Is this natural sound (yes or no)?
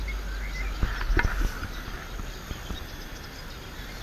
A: yes